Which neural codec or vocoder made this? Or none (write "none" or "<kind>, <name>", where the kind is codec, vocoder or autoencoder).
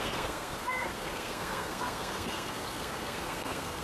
codec, SNAC